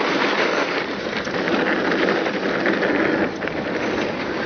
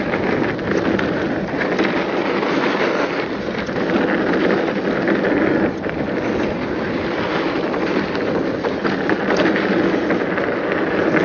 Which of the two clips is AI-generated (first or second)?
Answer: first